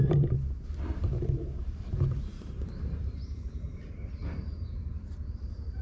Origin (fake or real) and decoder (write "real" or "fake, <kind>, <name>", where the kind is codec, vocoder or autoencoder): fake, vocoder, BigVGAN v2